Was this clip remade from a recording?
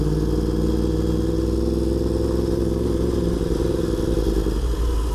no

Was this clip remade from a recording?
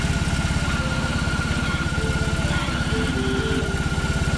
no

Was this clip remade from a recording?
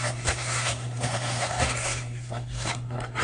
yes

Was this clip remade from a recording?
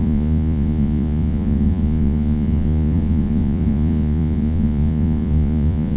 yes